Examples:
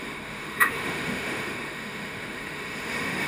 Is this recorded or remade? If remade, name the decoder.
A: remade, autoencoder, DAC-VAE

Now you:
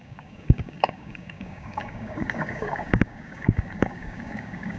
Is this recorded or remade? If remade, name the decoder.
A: remade, codec, DAC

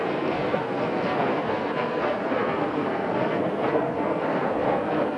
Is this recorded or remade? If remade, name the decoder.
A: remade, codec, SNAC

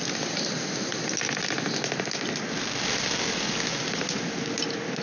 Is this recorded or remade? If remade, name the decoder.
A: recorded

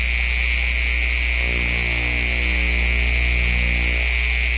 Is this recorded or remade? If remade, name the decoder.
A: recorded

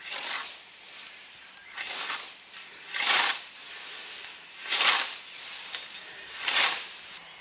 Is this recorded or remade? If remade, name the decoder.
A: recorded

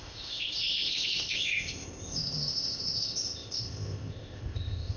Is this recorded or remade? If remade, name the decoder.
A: remade, codec, ZipCodec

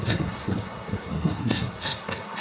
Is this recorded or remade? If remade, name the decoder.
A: remade, codec, SNAC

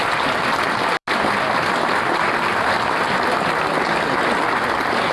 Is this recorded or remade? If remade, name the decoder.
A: recorded